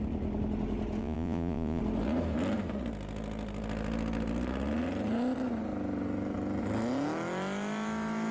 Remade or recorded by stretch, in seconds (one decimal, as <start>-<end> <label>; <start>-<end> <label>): 0.0-1.0 recorded; 1.0-1.8 remade; 1.8-8.3 recorded